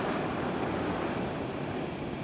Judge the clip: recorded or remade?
recorded